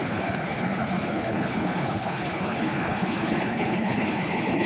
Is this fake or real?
fake